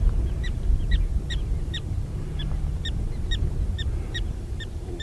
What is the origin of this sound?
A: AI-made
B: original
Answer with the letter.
A